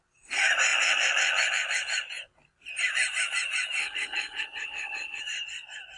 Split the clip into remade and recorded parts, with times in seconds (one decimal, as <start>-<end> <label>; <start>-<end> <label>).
0.0-3.8 recorded; 3.8-5.2 remade; 5.2-6.0 recorded